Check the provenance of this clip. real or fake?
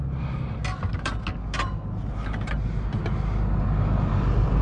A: real